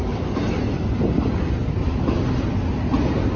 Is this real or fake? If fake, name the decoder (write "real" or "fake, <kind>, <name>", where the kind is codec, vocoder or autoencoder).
real